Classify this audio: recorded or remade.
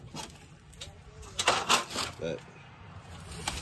recorded